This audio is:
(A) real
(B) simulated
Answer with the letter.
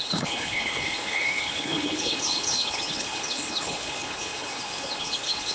B